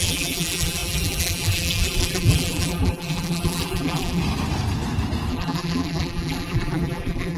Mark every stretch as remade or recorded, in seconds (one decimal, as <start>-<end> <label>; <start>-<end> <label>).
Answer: 0.0-4.2 remade; 4.2-5.3 recorded; 5.3-7.4 remade